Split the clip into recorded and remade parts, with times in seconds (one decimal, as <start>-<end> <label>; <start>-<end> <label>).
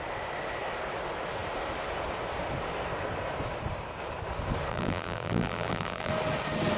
0.0-4.7 recorded; 4.7-6.1 remade; 6.1-6.8 recorded